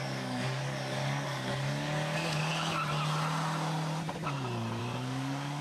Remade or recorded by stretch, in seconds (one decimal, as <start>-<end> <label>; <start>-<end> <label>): 0.0-2.5 remade; 2.5-4.8 recorded; 4.8-5.6 remade